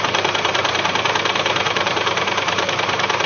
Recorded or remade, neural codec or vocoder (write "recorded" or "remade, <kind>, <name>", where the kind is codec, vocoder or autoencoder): remade, vocoder, BigVGAN v2